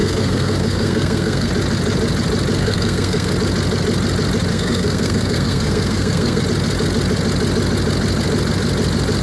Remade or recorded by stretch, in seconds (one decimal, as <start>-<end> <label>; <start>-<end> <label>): 0.0-1.5 remade; 1.5-2.6 recorded; 2.6-3.3 remade; 3.3-4.5 recorded; 4.5-6.4 remade; 6.4-9.2 recorded